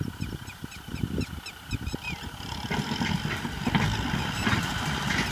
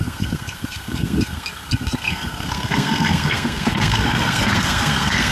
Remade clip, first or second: second